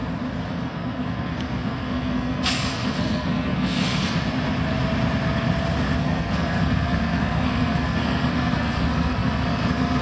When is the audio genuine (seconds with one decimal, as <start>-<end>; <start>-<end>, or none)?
0.0-0.5; 4.0-6.0